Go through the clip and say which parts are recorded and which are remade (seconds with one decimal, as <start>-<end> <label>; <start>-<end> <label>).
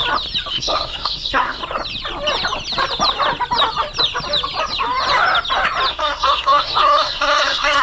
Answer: 0.0-0.5 recorded; 0.5-1.6 remade; 1.6-5.9 recorded; 5.9-7.8 remade